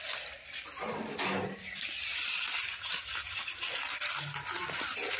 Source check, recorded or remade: recorded